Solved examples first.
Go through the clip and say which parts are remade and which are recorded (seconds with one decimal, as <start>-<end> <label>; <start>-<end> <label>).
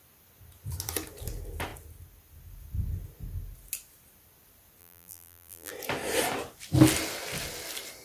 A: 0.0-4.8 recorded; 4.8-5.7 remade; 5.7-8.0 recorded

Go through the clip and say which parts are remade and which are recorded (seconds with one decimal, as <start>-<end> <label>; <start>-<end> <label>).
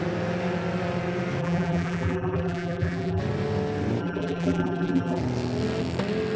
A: 0.0-1.4 recorded; 1.4-3.2 remade; 3.2-4.0 recorded; 4.0-5.2 remade; 5.2-6.4 recorded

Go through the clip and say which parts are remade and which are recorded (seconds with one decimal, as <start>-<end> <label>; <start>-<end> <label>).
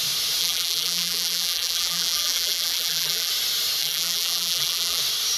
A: 0.0-0.4 recorded; 0.4-3.3 remade; 3.3-3.8 recorded; 3.8-5.0 remade; 5.0-5.4 recorded